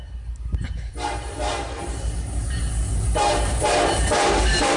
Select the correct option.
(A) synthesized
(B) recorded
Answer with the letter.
A